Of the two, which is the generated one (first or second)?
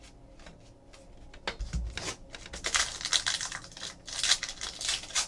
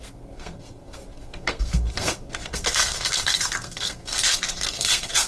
second